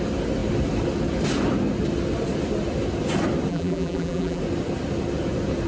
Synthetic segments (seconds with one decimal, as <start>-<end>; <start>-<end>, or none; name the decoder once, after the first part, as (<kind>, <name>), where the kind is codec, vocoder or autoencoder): 3.5-4.4 (vocoder, BigVGAN v2)